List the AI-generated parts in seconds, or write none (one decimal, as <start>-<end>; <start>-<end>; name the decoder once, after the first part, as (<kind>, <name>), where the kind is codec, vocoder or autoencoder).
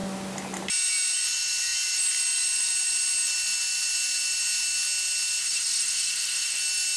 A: 5.4-6.6 (codec, SNAC)